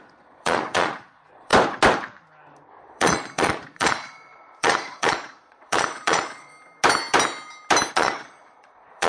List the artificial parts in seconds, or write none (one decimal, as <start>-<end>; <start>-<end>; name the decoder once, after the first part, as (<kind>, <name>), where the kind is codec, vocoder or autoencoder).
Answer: 0.0-1.5 (vocoder, Vocos); 2.8-6.5; 7.9-9.1